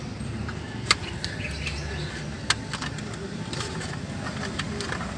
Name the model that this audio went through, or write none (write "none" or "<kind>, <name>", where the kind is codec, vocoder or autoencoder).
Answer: none